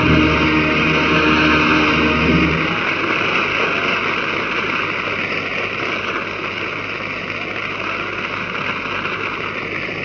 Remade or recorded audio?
recorded